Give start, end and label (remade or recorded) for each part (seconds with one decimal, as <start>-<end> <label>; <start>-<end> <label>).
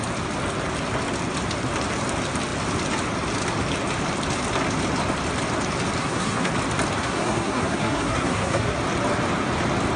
0.0-6.0 recorded; 6.0-6.5 remade; 6.5-7.0 recorded; 7.0-8.8 remade; 8.8-10.0 recorded